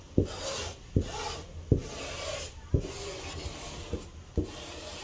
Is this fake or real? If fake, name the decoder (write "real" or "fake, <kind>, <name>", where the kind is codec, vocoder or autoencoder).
real